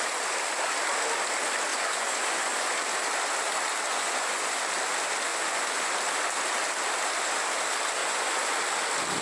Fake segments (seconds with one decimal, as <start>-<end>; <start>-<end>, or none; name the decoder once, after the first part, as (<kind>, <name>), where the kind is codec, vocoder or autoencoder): 1.7-2.7 (vocoder, Vocos); 3.9-4.6; 5.3-5.9; 8.0-8.5